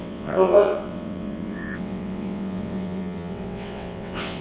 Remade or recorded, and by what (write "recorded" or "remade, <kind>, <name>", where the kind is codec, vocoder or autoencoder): remade, vocoder, WaveNeXt